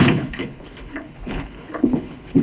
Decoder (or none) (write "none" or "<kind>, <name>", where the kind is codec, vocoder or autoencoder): codec, HILCodec